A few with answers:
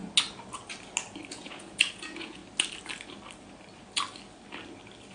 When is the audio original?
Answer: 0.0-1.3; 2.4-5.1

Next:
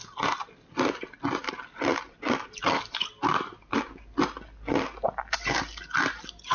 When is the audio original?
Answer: 0.0-6.5

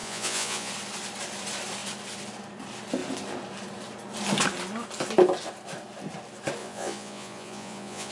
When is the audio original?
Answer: 0.7-6.6

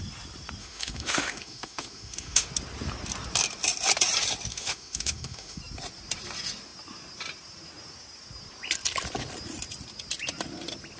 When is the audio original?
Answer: 0.0-0.6; 2.5-4.5; 5.6-11.0